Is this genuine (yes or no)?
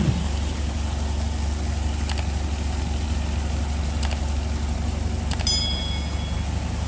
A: yes